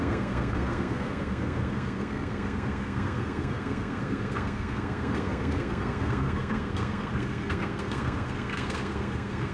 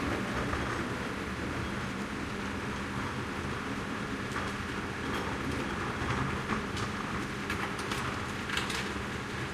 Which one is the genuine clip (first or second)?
second